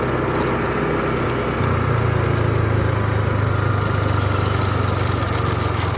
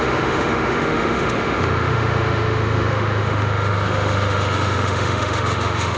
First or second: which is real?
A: first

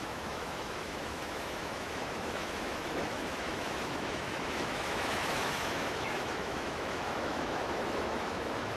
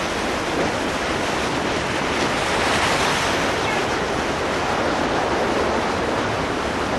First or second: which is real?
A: second